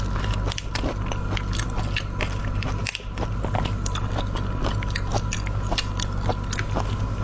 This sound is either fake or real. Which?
real